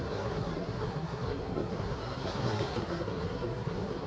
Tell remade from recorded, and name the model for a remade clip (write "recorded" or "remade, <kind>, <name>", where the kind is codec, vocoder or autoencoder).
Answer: remade, codec, SNAC